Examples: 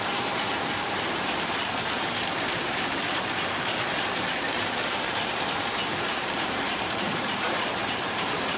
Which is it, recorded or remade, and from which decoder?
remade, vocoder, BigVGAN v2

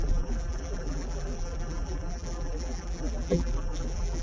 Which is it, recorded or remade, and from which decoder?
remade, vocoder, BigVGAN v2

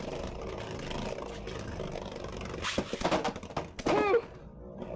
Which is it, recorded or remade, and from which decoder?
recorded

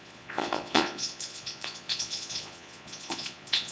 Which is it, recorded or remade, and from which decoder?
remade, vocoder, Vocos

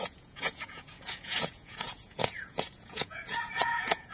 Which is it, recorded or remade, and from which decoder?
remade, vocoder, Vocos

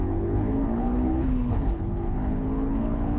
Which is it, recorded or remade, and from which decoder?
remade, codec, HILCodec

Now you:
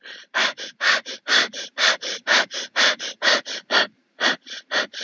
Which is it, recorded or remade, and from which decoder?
remade, vocoder, BigVGAN v2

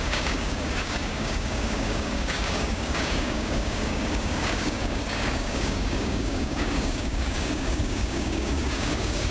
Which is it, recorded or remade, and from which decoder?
remade, codec, DAC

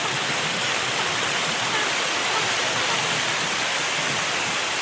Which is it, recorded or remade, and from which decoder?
recorded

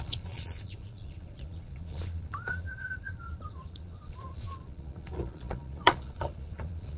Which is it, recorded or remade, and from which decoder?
remade, vocoder, Vocos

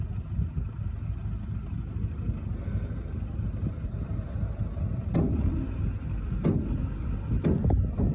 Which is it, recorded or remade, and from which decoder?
recorded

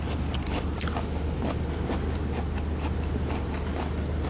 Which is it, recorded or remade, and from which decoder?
recorded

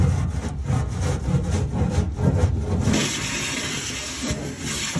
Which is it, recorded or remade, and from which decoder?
recorded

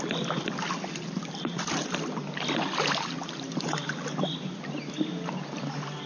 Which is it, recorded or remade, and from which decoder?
recorded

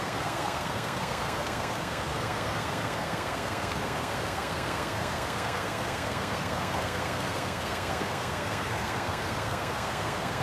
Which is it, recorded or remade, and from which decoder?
remade, codec, SNAC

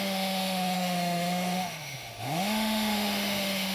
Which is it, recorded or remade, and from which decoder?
remade, autoencoder, DAC-VAE